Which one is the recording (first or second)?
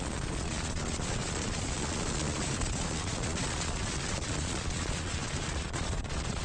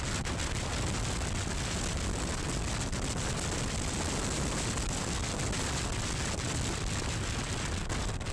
second